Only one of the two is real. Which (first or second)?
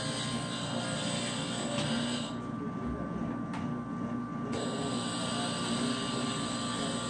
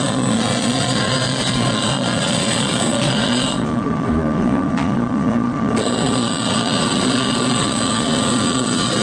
first